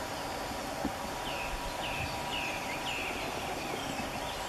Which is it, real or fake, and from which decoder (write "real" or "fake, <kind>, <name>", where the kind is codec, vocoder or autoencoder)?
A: real